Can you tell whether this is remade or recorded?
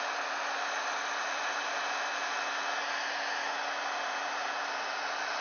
recorded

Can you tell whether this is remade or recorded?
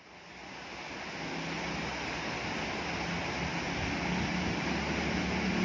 recorded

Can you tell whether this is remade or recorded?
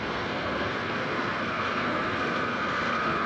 remade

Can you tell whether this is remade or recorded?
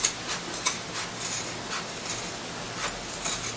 recorded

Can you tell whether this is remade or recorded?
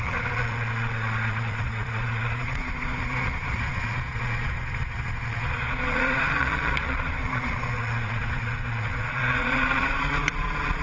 remade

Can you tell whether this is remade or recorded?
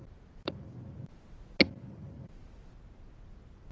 recorded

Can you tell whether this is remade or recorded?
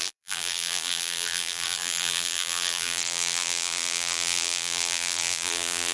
remade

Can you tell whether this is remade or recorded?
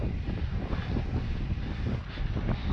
recorded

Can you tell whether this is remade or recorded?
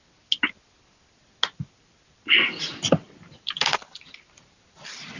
recorded